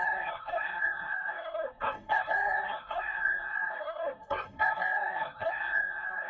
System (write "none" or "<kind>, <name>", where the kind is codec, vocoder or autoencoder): codec, SNAC